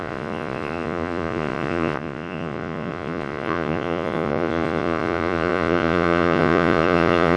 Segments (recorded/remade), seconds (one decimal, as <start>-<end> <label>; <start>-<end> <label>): 0.0-7.4 remade